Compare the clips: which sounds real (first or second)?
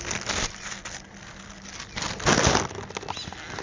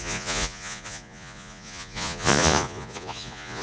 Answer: first